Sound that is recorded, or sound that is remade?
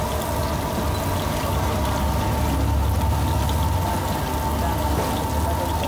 recorded